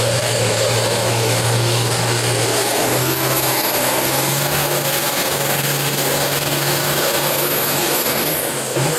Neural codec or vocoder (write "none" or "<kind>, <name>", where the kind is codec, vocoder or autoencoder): codec, DAC